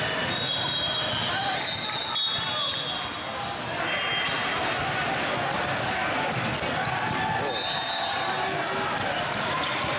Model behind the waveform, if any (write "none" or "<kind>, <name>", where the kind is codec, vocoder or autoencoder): none